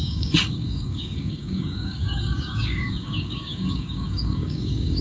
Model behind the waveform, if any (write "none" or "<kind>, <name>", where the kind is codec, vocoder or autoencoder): codec, DAC